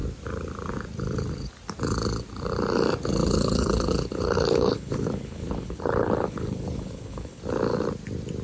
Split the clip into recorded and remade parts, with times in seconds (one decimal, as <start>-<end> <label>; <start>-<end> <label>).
0.0-3.2 recorded; 3.2-7.4 remade; 7.4-8.4 recorded